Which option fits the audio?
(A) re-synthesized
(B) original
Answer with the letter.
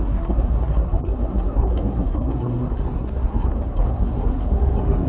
A